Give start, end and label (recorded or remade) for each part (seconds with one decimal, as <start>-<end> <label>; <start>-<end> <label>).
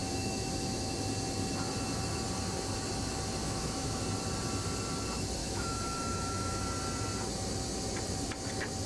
0.0-0.9 remade; 0.9-3.4 recorded; 3.4-4.0 remade; 4.0-5.4 recorded; 5.4-6.6 remade; 6.6-8.9 recorded